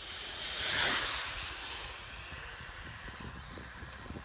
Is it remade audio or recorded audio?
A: remade